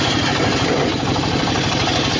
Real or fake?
real